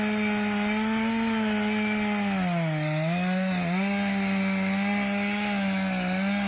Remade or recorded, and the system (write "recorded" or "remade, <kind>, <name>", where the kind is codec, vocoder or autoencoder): recorded